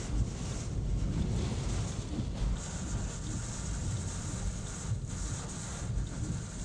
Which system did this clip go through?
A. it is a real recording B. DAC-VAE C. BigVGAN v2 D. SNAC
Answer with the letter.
A